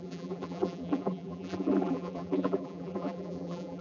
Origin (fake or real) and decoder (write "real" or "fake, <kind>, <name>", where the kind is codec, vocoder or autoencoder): fake, vocoder, BigVGAN v2